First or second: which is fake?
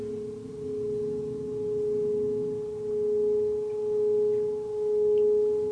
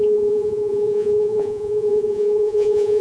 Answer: second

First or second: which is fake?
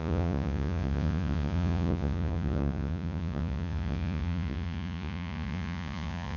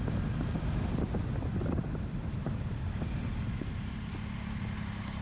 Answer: first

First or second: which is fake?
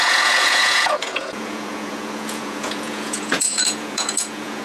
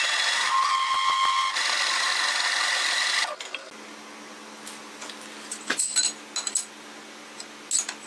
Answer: first